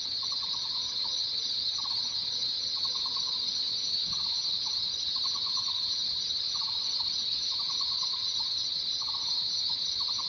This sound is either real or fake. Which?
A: fake